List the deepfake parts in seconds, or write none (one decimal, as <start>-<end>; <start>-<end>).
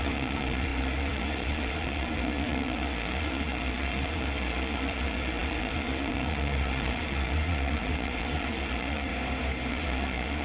0.0-9.1; 9.7-10.4